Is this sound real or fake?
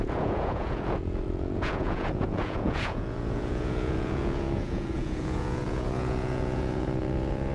fake